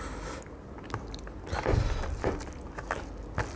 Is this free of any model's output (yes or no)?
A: yes